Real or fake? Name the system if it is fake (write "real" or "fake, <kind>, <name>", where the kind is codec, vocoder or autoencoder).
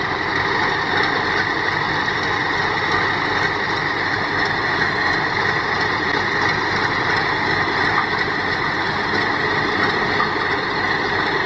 real